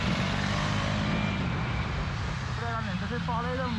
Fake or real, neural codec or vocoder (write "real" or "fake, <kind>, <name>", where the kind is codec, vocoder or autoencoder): real